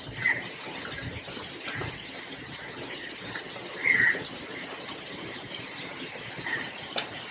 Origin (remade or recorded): recorded